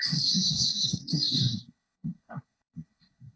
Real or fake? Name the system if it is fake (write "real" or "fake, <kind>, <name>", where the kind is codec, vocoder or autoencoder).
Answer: fake, codec, SNAC